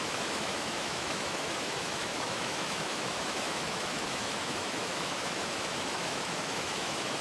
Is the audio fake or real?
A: fake